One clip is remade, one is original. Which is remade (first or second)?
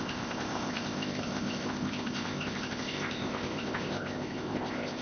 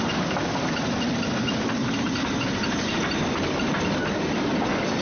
first